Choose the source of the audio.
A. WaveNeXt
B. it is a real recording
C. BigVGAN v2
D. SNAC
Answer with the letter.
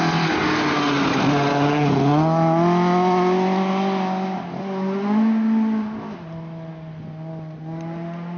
B